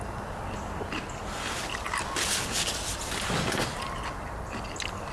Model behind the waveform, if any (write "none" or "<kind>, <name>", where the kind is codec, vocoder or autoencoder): none